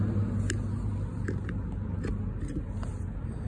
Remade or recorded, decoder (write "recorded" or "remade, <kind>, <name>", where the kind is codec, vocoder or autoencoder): recorded